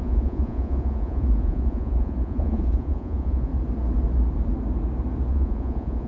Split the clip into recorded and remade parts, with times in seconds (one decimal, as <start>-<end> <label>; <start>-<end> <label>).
0.0-3.5 remade; 3.5-5.3 recorded; 5.3-6.1 remade